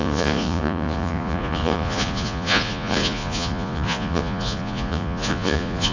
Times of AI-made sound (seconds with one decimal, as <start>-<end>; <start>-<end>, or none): 0.0-5.9